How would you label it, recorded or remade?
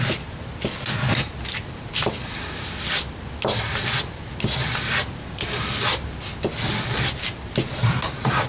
recorded